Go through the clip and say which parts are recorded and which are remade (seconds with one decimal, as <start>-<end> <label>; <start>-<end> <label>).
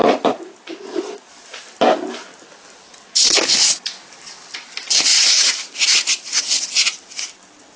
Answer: 0.0-1.3 remade; 1.3-5.1 recorded; 5.1-6.4 remade; 6.4-7.8 recorded